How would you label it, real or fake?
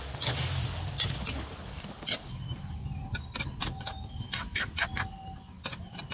real